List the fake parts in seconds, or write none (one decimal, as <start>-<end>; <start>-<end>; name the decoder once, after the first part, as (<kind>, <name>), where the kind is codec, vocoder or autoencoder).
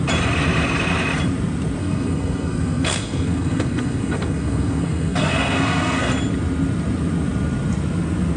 1.8-6.1 (codec, SNAC)